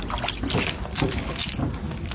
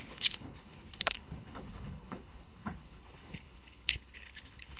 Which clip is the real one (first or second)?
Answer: first